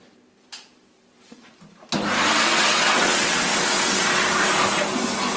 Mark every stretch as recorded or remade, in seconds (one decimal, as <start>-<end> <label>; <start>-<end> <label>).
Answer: 0.0-2.3 recorded; 2.3-4.2 remade; 4.2-5.4 recorded

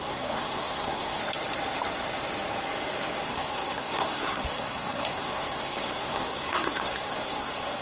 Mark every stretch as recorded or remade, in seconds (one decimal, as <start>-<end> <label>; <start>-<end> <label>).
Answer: 0.0-1.2 remade; 1.2-3.3 recorded; 3.3-7.8 remade